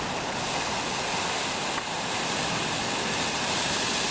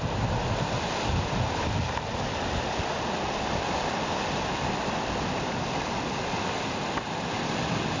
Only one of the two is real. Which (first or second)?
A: first